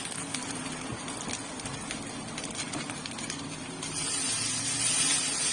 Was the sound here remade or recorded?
recorded